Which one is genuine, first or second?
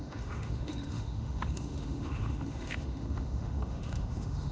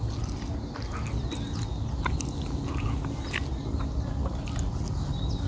second